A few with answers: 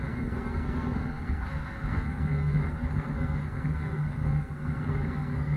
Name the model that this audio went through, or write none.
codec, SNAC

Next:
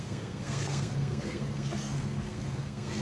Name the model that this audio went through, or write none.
codec, SNAC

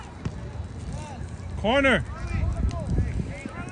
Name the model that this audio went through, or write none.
none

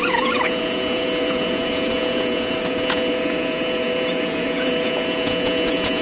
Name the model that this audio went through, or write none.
vocoder, Vocos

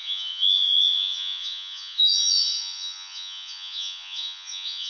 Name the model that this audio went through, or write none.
vocoder, Vocos